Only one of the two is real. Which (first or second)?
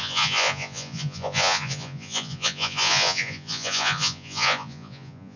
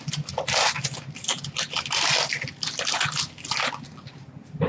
second